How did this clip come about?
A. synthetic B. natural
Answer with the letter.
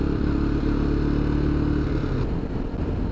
B